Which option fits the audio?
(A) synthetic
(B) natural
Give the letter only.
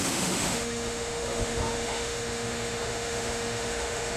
A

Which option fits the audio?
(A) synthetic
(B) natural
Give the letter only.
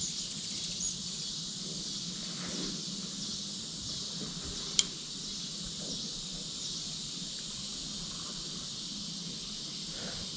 B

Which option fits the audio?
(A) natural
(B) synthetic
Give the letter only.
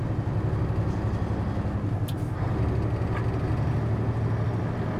A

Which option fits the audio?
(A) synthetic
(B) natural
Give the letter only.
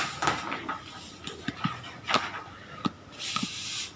B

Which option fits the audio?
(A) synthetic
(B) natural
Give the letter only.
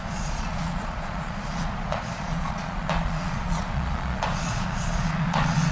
A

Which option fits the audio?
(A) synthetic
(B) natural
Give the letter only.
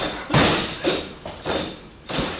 A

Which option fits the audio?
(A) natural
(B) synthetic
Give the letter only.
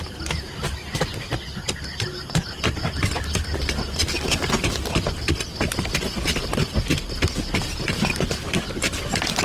A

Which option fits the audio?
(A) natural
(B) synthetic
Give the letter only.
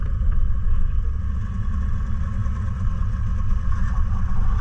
B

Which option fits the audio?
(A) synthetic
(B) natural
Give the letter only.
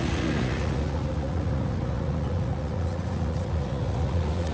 A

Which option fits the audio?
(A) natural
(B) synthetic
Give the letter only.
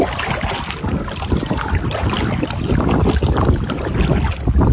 A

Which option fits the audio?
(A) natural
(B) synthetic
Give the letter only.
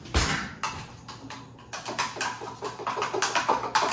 A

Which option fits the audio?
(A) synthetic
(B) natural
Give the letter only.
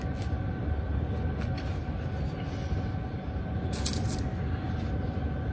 B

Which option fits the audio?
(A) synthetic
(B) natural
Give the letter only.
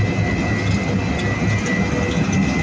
B